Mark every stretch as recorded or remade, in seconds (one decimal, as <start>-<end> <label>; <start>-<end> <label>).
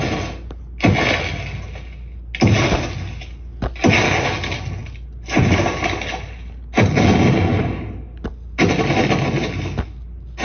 0.0-10.4 recorded